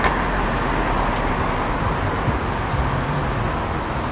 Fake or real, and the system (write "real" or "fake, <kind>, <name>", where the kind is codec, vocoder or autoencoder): real